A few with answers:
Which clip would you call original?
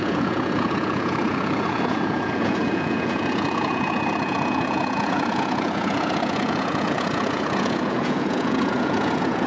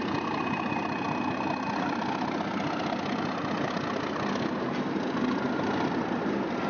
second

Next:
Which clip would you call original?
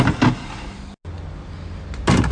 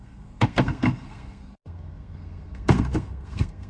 first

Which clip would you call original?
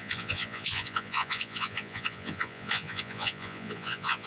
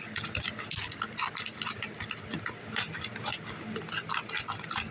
second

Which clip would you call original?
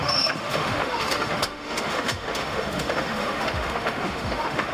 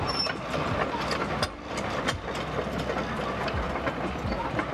second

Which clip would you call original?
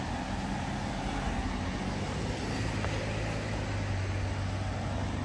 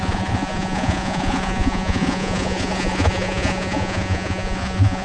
first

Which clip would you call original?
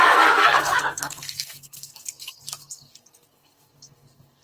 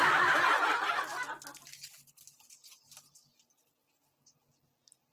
second